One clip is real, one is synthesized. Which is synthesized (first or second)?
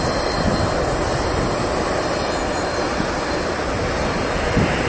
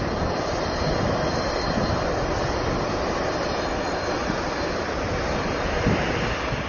second